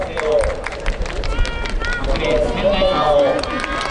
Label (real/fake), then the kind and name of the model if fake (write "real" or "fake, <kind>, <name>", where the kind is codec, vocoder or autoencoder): real